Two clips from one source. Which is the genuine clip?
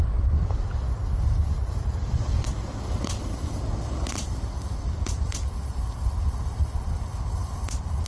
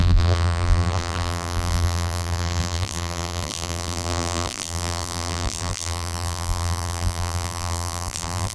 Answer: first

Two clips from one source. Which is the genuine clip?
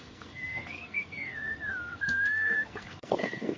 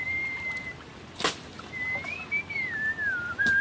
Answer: second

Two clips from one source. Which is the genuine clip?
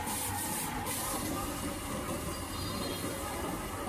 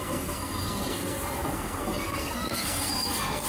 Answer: first